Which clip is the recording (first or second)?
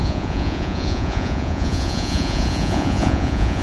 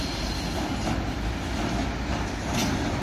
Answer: second